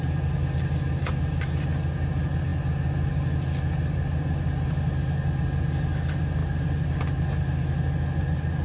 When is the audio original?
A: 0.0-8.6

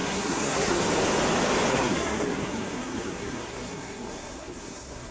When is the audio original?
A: 0.8-1.7

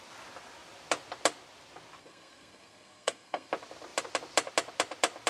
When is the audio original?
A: 0.0-2.0; 3.5-5.3